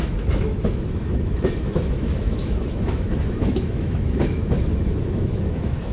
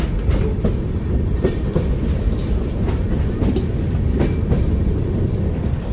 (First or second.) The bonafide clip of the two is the second